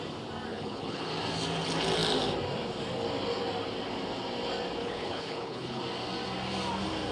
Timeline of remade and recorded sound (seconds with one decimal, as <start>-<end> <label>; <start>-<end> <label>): 0.0-0.5 recorded; 0.5-1.1 remade; 1.1-4.8 recorded; 4.8-5.8 remade; 5.8-7.1 recorded